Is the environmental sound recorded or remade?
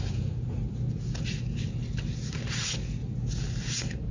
recorded